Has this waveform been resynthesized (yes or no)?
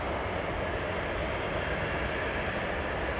no